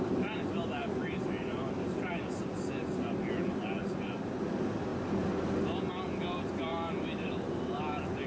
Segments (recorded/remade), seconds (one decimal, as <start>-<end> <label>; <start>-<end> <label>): 0.0-0.8 recorded; 0.8-2.4 remade; 2.4-3.8 recorded; 3.8-4.4 remade; 4.4-6.7 recorded; 6.7-7.3 remade; 7.3-8.3 recorded